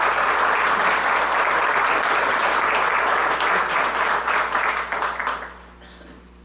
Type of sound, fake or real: real